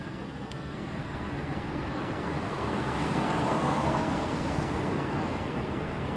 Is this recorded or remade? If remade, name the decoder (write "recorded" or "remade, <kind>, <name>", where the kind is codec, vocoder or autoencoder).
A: remade, codec, SNAC